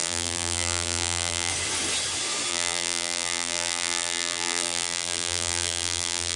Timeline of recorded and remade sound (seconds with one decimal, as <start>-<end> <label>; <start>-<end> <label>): 0.0-1.5 remade; 1.5-2.5 recorded; 2.5-6.4 remade